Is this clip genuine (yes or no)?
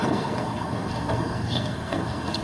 no